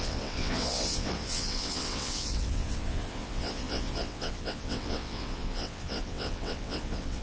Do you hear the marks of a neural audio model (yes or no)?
yes